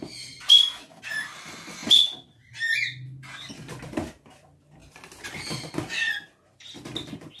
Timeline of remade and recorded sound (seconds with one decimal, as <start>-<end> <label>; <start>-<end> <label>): 0.0-0.5 recorded; 0.5-1.0 remade; 1.0-7.4 recorded